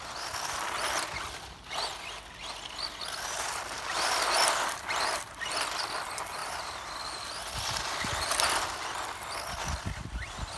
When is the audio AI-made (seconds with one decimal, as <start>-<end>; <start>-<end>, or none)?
none